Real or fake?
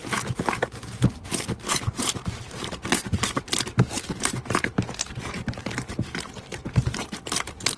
fake